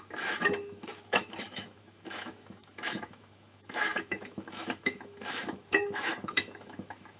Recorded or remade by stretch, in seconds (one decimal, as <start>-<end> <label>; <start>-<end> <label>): 0.0-7.2 remade